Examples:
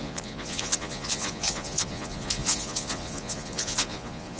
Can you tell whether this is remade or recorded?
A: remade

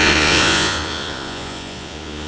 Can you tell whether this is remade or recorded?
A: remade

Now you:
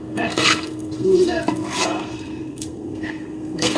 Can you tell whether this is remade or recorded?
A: remade